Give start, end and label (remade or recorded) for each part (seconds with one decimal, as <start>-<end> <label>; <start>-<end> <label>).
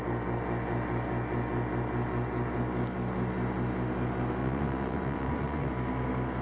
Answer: 0.0-4.4 recorded; 4.4-5.7 remade; 5.7-6.4 recorded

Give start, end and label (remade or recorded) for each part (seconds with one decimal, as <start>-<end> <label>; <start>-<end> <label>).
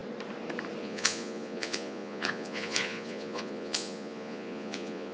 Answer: 0.0-0.8 recorded; 0.8-5.1 remade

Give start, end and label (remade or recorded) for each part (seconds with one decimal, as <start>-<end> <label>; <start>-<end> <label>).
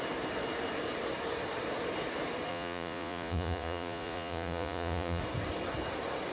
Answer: 0.0-2.5 recorded; 2.5-5.2 remade; 5.2-6.3 recorded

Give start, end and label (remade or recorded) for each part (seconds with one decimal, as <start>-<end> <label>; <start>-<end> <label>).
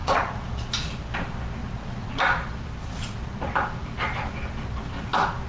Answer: 0.0-0.7 remade; 0.7-1.6 recorded; 1.6-2.1 remade; 2.1-2.8 recorded; 2.8-3.4 remade; 3.4-5.5 recorded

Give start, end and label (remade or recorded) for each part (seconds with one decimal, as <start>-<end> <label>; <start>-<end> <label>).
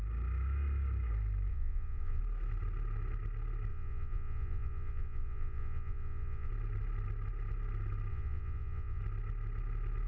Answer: 0.0-1.5 recorded; 1.5-2.2 remade; 2.2-3.7 recorded; 3.7-6.5 remade; 6.5-8.1 recorded; 8.1-9.0 remade; 9.0-10.1 recorded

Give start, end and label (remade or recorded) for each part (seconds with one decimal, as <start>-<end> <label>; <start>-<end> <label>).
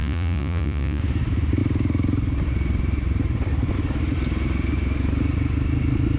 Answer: 0.0-1.0 remade; 1.0-6.2 recorded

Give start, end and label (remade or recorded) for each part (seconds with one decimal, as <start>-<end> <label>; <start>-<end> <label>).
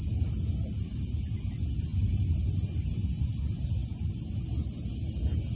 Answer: 0.0-5.6 recorded